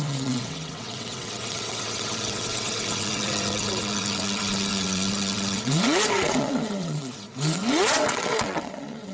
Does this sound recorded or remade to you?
remade